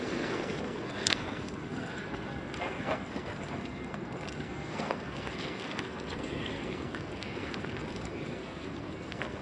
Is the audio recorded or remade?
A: remade